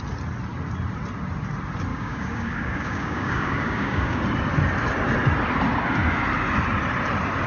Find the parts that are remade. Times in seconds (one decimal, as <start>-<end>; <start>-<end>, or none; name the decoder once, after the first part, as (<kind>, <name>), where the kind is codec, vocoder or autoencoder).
1.9-4.2 (codec, DAC)